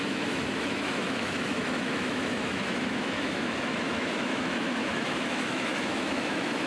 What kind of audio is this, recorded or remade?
remade